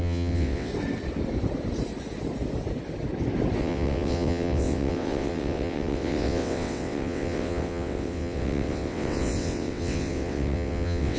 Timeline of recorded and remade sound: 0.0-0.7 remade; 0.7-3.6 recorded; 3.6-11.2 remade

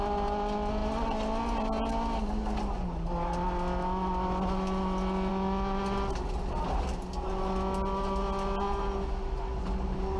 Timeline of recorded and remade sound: 0.0-10.2 recorded

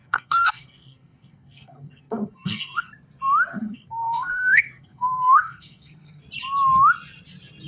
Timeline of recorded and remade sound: 0.0-2.9 remade; 2.9-3.5 recorded; 3.5-6.2 remade; 6.2-7.7 recorded

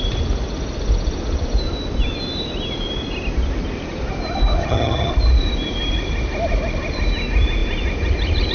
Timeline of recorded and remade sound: 0.0-4.6 recorded; 4.6-5.1 remade; 5.1-8.5 recorded

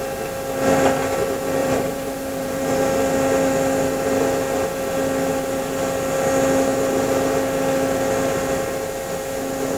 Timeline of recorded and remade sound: 0.0-1.6 recorded; 1.6-2.8 remade; 2.8-9.8 recorded

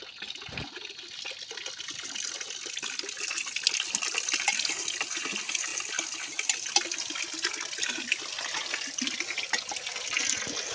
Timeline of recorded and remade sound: 0.0-10.7 recorded

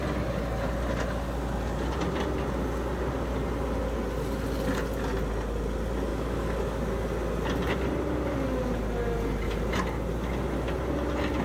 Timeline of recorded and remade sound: 0.0-6.1 recorded; 6.1-6.8 remade; 6.8-11.4 recorded

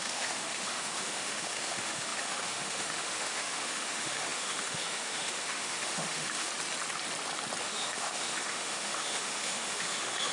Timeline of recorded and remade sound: 0.0-6.5 remade; 6.5-7.6 recorded; 7.6-10.3 remade